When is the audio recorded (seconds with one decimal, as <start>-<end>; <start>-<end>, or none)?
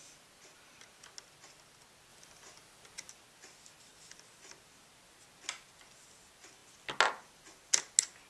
0.0-2.1; 3.1-8.3